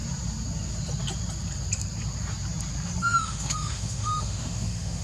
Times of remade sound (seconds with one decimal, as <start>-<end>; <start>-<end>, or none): 3.0-5.0